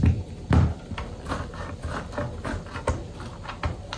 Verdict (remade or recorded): recorded